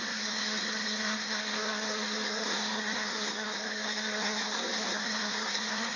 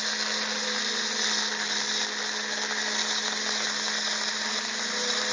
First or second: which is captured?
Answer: second